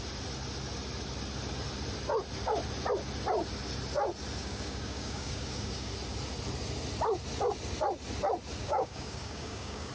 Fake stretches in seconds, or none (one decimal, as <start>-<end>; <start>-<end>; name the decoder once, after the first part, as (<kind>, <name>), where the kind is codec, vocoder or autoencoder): 4.4-5.9 (codec, DAC); 8.6-9.9

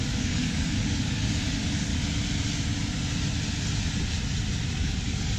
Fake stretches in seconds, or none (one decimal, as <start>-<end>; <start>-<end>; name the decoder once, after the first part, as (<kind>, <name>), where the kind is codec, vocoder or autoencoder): 0.0-1.9 (codec, DAC); 4.8-5.4

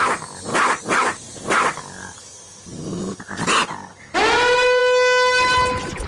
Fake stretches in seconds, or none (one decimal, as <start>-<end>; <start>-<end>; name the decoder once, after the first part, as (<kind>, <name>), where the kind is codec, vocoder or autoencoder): 0.5-2.2 (codec, DAC)

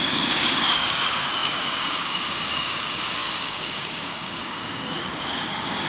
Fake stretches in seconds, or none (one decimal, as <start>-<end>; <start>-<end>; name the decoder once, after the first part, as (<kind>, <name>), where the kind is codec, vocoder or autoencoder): 0.0-5.9 (codec, DAC)